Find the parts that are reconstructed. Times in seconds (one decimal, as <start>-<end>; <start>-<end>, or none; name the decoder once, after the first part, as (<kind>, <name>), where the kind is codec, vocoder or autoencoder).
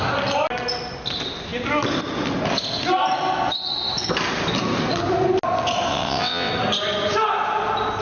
5.9-6.5 (vocoder, WaveNeXt)